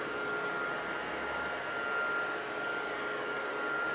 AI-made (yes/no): no